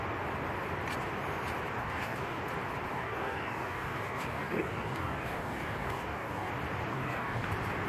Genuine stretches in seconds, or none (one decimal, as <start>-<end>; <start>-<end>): 0.0-1.8; 2.4-2.9; 6.5-6.9; 7.5-7.9